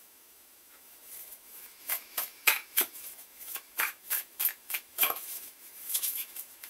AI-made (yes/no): yes